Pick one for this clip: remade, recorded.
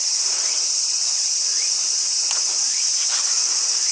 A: remade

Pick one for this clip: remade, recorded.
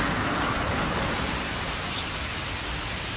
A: recorded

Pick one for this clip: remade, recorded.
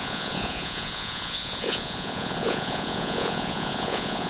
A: remade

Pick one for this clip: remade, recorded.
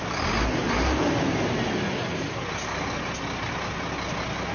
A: recorded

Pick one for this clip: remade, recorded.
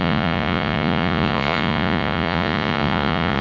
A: remade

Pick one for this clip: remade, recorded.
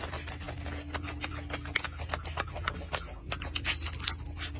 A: recorded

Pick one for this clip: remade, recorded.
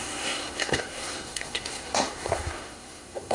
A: remade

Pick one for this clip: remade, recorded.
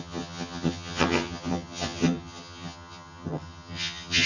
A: remade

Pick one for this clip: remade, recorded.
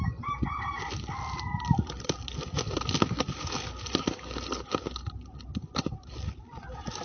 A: recorded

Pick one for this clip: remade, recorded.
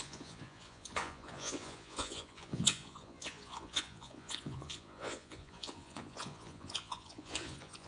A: remade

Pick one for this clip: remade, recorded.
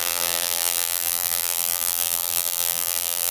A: remade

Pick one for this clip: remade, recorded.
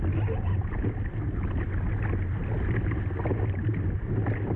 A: recorded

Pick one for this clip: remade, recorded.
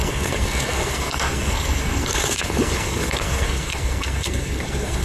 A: remade